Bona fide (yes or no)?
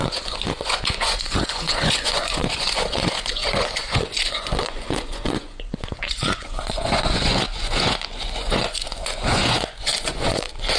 no